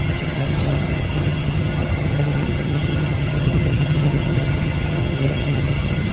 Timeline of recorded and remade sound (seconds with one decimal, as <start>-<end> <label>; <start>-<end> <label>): 0.0-6.1 remade